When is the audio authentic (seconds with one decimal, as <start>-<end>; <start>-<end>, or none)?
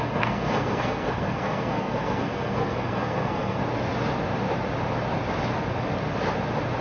3.6-6.8